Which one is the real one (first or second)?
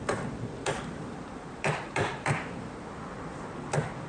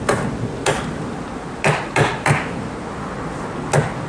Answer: second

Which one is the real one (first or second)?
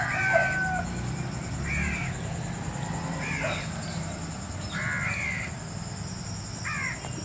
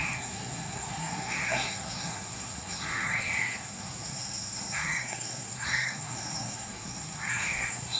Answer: first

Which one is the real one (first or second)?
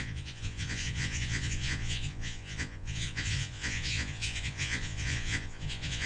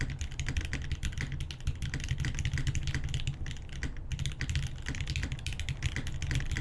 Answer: second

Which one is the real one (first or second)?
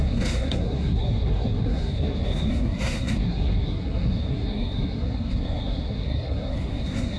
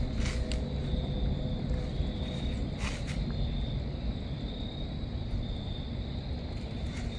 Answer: second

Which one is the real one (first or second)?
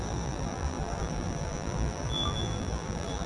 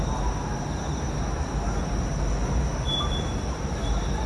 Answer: second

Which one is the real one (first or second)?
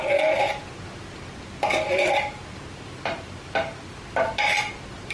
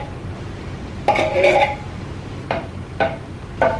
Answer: first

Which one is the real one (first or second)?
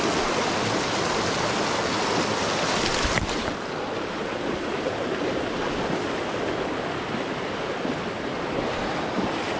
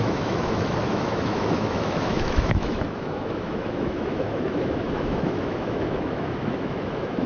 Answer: first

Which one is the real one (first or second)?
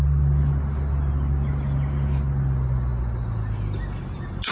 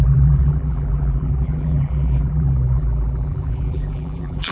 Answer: first